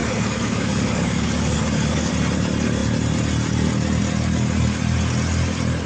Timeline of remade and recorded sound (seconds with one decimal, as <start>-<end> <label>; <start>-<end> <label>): 0.0-2.1 remade; 2.1-5.9 recorded